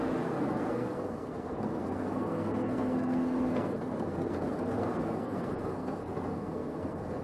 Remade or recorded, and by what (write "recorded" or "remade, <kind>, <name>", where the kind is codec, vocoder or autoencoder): remade, codec, SNAC